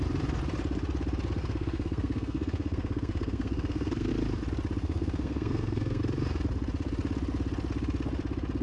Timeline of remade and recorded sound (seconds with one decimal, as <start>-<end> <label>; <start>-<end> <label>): 0.0-1.4 recorded; 1.4-4.1 remade; 4.1-4.8 recorded; 4.8-6.0 remade; 6.0-8.6 recorded